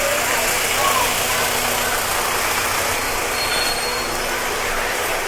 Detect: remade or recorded recorded